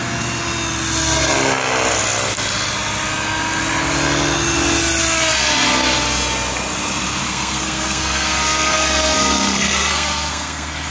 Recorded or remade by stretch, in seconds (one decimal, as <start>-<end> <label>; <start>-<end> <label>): 0.0-7.2 recorded; 7.2-10.9 remade